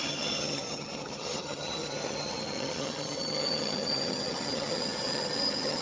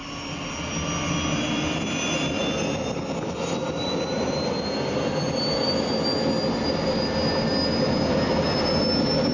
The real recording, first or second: second